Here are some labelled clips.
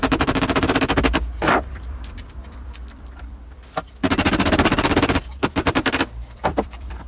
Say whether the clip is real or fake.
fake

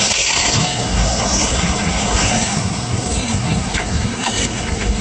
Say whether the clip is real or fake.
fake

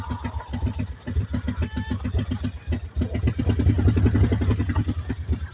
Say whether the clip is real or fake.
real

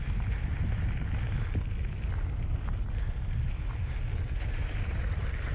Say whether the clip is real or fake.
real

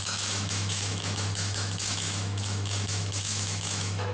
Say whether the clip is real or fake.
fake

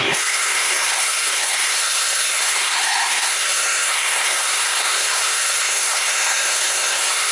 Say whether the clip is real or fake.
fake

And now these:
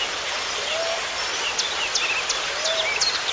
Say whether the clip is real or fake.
real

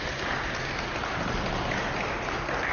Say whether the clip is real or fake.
real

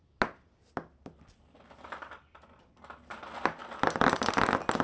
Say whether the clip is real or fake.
real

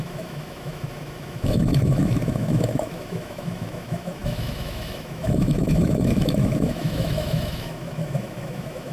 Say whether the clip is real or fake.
fake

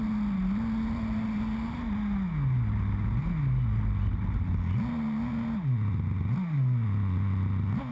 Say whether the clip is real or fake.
real